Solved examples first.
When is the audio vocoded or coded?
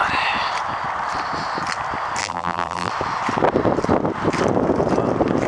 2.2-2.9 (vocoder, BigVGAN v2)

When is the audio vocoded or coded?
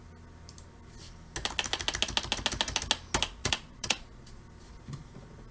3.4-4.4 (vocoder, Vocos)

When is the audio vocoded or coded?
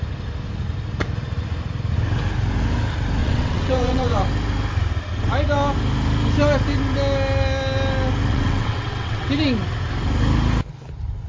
3.2-4.2 (vocoder, WaveNeXt); 8.3-9.3